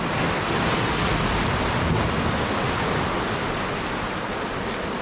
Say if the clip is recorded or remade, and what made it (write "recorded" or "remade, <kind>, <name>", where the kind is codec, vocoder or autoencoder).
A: recorded